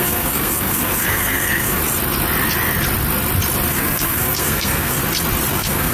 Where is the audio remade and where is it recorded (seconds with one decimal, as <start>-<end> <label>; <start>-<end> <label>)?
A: 0.0-1.8 remade; 1.8-3.7 recorded; 3.7-5.0 remade; 5.0-5.5 recorded; 5.5-5.9 remade